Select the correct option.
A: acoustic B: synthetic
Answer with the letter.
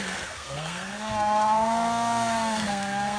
B